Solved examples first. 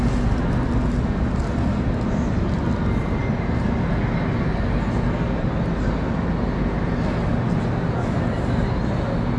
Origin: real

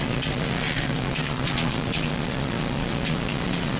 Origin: fake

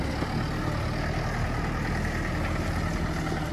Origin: real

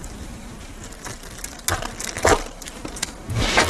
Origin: real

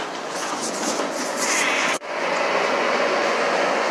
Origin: fake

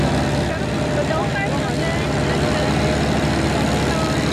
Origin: real